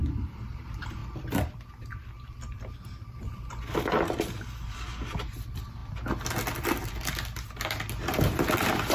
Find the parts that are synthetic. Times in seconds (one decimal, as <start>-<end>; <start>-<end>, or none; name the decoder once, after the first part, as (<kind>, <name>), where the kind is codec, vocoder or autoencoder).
none